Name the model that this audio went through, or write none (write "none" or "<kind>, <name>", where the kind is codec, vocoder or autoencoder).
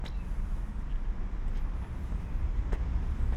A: none